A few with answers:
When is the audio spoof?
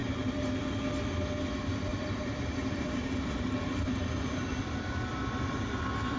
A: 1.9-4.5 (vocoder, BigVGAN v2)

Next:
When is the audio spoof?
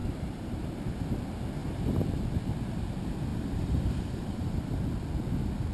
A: 0.0-0.7 (vocoder, BigVGAN v2); 1.6-2.2; 3.3-4.6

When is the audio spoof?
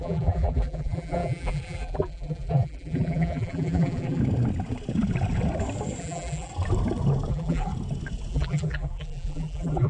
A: 0.0-4.2 (vocoder, BigVGAN v2); 6.0-6.5; 7.3-7.7; 8.3-9.9